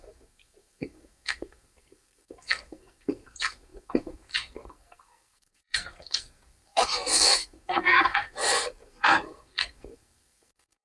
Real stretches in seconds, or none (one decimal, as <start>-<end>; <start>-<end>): none